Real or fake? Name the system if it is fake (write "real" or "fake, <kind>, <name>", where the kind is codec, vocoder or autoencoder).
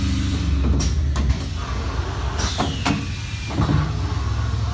real